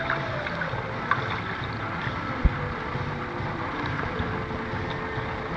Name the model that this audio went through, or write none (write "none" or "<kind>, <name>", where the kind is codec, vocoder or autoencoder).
none